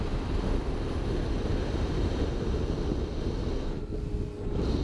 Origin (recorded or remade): recorded